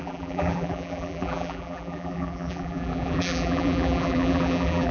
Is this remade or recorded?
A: remade